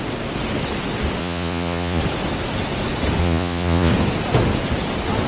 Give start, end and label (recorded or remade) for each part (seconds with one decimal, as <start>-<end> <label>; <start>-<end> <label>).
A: 0.0-1.2 recorded; 1.2-2.0 remade; 2.0-3.2 recorded; 3.2-3.9 remade; 3.9-5.3 recorded